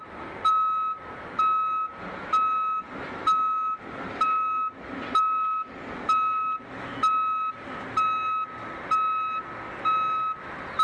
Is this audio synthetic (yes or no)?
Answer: no